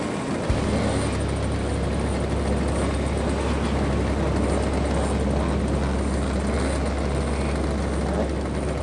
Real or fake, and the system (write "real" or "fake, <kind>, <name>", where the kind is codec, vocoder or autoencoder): real